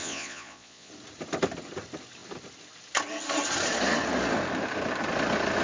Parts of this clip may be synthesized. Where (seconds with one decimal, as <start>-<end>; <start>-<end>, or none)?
0.0-0.9